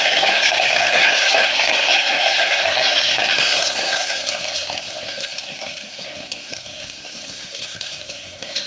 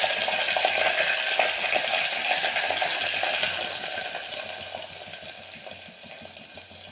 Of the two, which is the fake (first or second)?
first